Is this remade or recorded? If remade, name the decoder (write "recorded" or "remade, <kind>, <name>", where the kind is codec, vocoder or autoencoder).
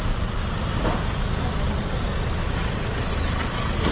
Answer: recorded